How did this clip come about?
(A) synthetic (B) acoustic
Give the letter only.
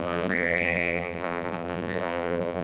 A